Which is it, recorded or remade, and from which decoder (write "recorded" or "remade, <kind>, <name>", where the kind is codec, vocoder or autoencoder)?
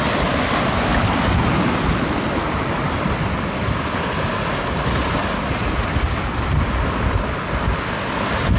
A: recorded